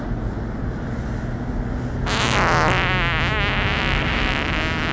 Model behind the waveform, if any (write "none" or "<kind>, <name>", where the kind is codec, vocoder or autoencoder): none